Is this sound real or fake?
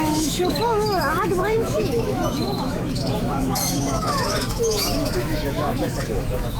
fake